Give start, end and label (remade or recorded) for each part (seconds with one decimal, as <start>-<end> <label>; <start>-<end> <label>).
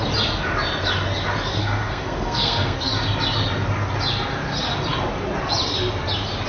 0.0-1.6 recorded; 1.6-2.9 remade; 2.9-6.5 recorded